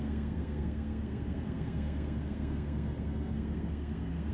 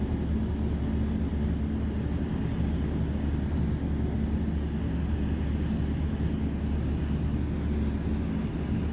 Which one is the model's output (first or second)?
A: first